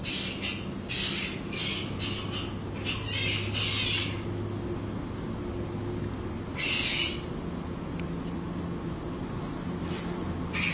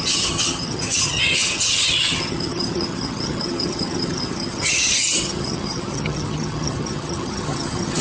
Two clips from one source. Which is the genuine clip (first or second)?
first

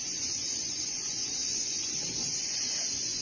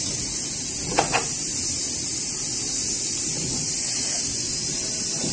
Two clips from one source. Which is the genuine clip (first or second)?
second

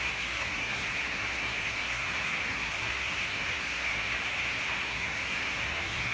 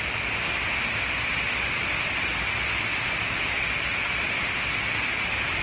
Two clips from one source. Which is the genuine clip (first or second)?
second